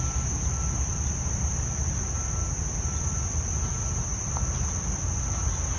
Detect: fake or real real